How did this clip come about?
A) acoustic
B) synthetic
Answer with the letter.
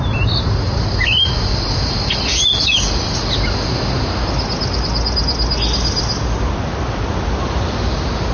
A